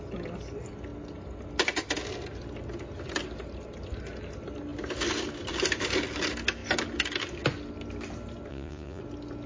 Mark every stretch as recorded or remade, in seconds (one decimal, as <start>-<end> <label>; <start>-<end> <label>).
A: 0.0-8.5 recorded; 8.5-9.0 remade; 9.0-9.5 recorded